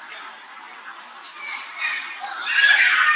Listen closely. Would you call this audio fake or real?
fake